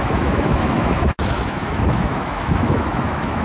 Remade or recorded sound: remade